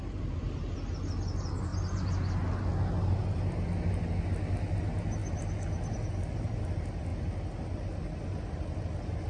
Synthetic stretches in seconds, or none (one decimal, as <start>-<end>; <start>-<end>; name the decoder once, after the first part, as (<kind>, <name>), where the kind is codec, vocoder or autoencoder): none